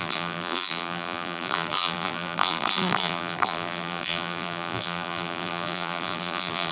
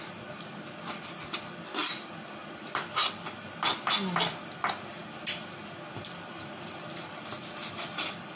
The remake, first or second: first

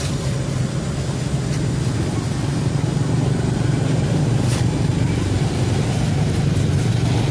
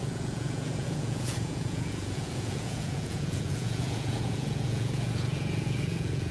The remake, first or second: second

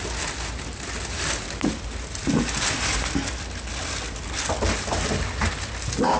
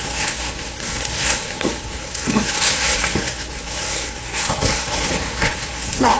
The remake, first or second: second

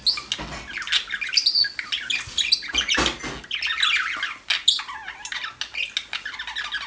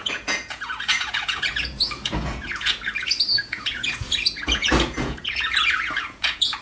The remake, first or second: second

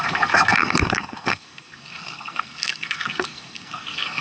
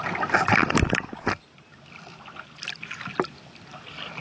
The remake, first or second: first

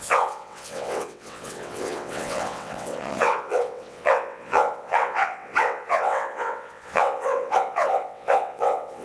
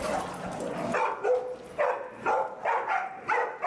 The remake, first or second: first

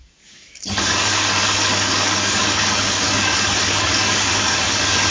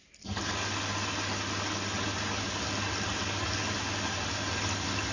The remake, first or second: first